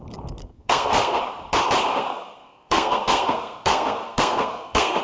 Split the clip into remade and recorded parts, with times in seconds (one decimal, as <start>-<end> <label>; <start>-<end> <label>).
0.0-0.4 recorded; 0.4-1.2 remade; 1.2-1.9 recorded; 1.9-5.0 remade